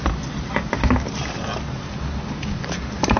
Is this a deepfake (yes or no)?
no